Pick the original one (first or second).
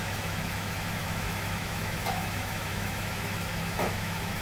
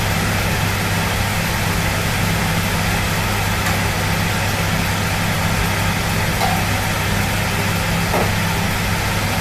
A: second